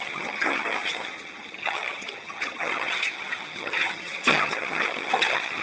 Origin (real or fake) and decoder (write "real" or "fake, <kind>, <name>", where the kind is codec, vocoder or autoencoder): fake, vocoder, HiFi-GAN